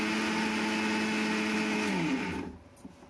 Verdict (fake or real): real